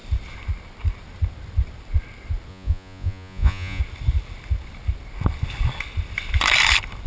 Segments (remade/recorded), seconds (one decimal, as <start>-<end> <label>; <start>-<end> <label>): 0.0-2.5 recorded; 2.5-3.8 remade; 3.8-7.1 recorded